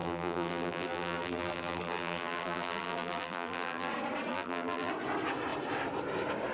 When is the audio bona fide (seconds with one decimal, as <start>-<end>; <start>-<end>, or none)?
3.9-4.3; 4.9-6.5